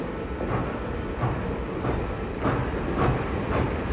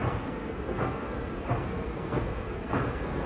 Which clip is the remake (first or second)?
second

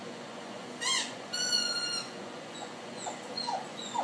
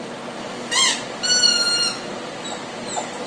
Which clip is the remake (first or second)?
first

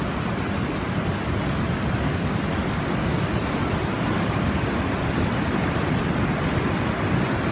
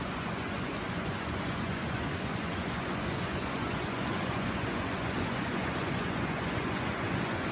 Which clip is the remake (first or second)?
second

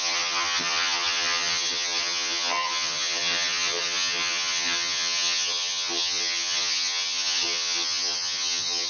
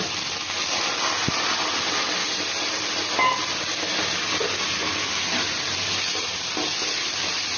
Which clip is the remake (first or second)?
first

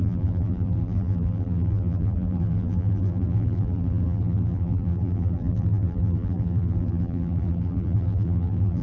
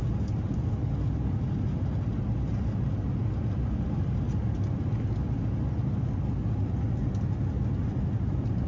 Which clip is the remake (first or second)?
first